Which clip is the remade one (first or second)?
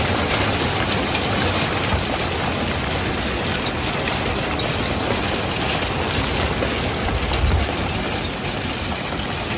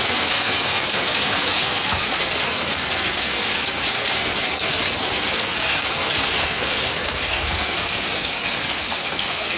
second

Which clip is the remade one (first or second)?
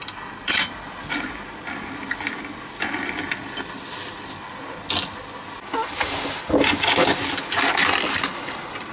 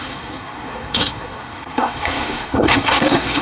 second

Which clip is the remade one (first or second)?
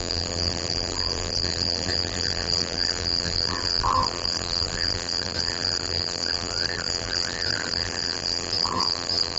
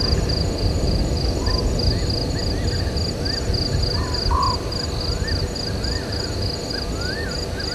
first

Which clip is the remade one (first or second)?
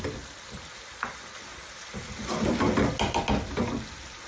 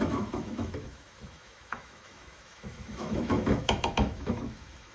second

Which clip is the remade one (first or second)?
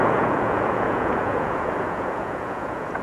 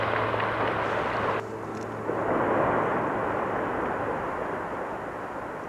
first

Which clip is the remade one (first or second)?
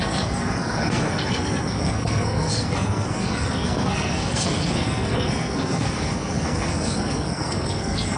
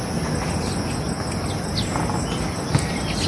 first